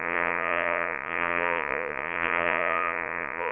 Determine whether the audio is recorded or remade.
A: remade